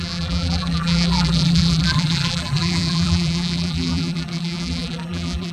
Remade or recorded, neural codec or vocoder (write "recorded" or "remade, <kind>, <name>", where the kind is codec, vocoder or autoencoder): remade, vocoder, BigVGAN v2